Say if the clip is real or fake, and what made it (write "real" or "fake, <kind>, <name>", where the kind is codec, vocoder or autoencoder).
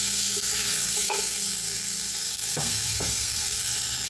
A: fake, codec, SNAC